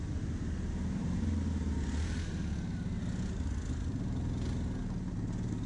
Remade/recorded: recorded